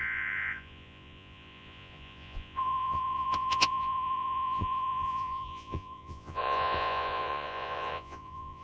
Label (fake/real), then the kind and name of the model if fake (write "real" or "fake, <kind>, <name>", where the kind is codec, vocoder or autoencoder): fake, vocoder, Vocos